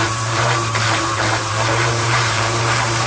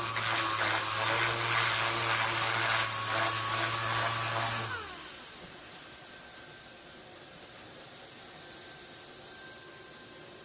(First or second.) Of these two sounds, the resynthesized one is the first